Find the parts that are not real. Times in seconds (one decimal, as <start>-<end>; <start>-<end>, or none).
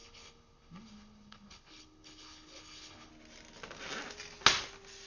0.0-3.1